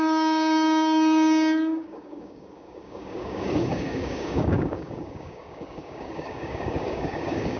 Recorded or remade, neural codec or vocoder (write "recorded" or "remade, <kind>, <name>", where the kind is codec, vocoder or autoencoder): remade, codec, DAC